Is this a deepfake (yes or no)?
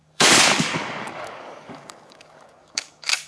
yes